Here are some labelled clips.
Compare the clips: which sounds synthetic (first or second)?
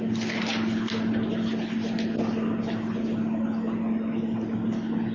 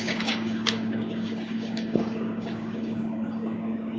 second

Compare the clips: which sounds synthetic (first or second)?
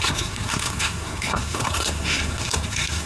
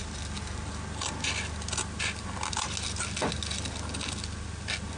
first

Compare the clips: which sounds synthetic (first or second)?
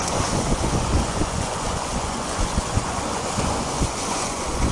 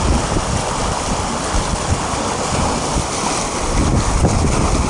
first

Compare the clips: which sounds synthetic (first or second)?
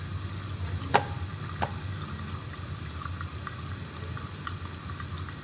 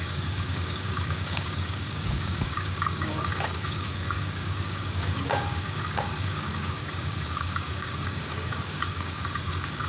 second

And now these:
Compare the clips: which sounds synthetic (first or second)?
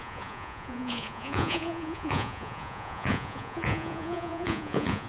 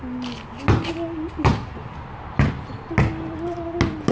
first